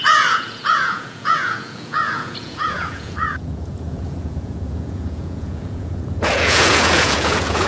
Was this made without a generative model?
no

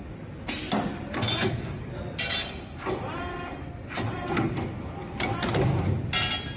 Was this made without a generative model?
yes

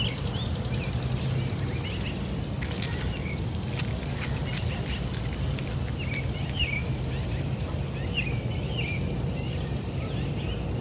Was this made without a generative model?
yes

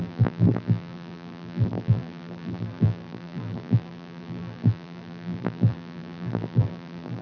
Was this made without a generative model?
no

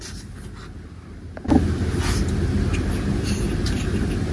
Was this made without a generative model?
yes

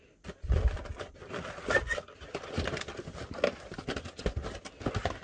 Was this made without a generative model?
yes